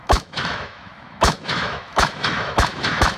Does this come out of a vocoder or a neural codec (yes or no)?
yes